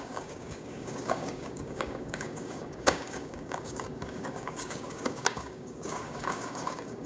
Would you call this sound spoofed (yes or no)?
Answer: yes